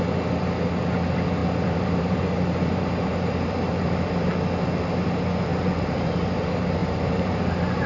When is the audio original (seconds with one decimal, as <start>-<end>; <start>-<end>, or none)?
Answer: 0.0-1.4; 4.3-5.5; 6.1-6.8